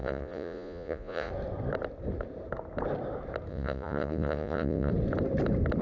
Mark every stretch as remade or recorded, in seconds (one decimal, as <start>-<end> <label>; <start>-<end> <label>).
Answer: 0.0-1.3 remade; 1.3-3.5 recorded; 3.5-4.9 remade; 4.9-5.8 recorded